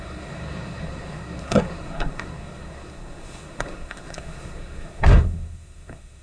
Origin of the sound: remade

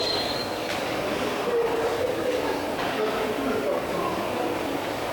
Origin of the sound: remade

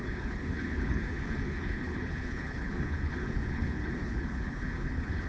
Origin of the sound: remade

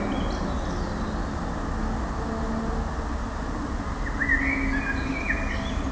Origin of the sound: recorded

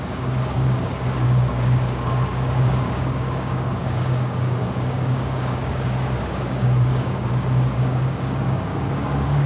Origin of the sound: remade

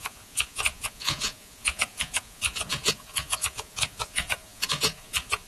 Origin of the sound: remade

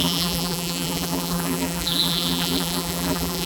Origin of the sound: remade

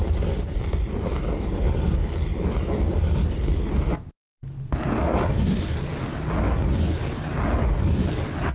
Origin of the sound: recorded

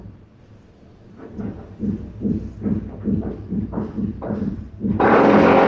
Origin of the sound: remade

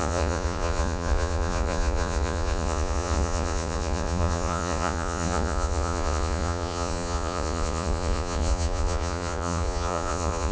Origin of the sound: remade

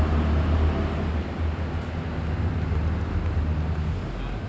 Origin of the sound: recorded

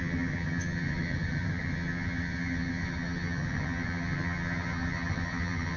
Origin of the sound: remade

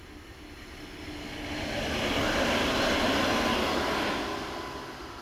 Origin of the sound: recorded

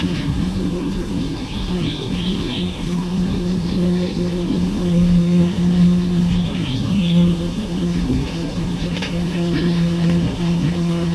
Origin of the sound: remade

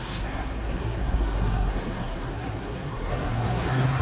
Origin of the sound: remade